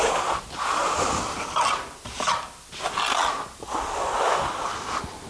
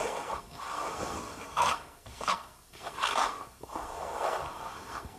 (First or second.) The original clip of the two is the first